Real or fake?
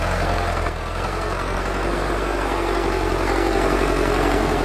fake